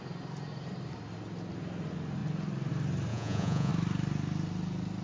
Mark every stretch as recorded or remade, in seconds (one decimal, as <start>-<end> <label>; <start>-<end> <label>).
0.0-3.1 recorded; 3.1-3.7 remade; 3.7-5.0 recorded